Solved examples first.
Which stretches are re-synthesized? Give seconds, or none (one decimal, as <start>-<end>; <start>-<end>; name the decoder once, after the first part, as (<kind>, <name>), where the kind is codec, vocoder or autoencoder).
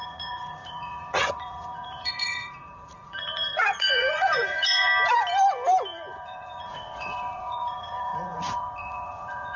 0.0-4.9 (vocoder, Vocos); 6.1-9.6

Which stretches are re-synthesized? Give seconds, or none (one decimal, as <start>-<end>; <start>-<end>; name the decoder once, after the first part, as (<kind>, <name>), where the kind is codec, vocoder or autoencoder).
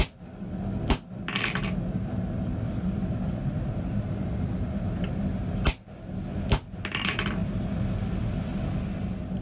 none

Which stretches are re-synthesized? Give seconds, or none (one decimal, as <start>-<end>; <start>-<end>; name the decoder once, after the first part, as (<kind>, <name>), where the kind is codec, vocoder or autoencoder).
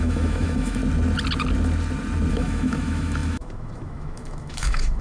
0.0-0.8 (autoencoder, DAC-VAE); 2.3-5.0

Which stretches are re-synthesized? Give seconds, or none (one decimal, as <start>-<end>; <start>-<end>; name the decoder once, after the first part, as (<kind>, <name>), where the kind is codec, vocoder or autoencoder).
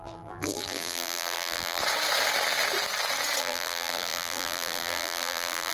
0.0-1.8 (vocoder, BigVGAN v2); 3.4-5.7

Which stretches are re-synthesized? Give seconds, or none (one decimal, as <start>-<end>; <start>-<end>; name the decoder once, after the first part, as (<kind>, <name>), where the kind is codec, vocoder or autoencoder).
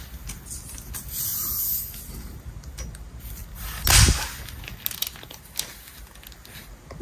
1.3-1.9 (vocoder, BigVGAN v2)